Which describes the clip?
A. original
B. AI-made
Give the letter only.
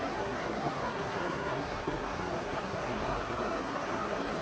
B